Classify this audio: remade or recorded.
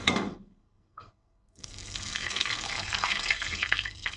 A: remade